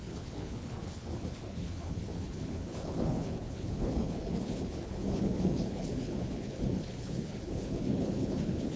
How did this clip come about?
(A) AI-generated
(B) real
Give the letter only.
A